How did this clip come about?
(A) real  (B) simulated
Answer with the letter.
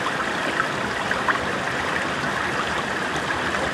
A